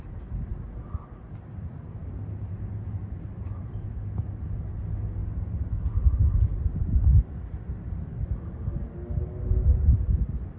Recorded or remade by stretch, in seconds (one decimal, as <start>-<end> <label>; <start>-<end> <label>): 0.0-10.6 recorded